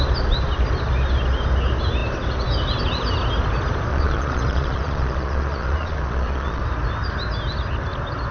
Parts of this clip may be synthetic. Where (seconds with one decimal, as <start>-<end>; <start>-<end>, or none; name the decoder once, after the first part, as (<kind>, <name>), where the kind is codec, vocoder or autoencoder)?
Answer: 3.9-6.6 (vocoder, Vocos)